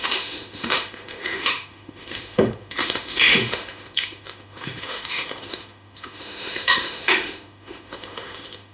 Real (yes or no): no